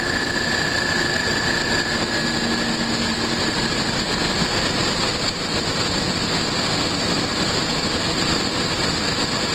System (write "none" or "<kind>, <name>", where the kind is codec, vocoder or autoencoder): none